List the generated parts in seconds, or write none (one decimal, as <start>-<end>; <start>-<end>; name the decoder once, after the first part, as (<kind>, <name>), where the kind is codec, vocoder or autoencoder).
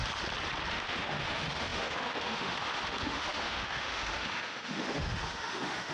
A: 0.7-5.9 (autoencoder, DAC-VAE)